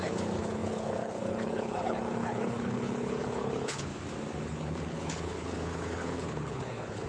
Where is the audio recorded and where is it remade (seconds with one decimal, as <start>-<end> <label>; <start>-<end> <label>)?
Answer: 0.0-3.9 remade; 3.9-4.4 recorded; 4.4-7.1 remade